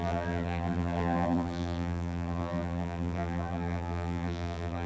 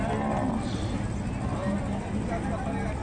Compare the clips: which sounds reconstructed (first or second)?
first